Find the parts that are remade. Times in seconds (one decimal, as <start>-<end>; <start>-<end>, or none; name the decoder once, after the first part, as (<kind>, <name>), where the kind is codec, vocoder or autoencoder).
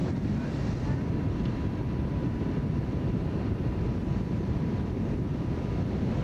0.0-0.7 (vocoder, BigVGAN v2); 2.2-5.6